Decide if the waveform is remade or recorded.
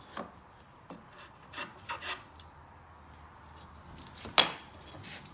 recorded